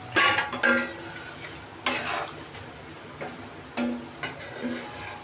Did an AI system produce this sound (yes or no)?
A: no